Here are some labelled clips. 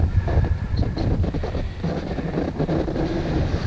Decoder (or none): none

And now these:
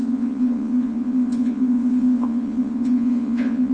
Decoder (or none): vocoder, Vocos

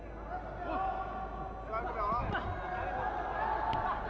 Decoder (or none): none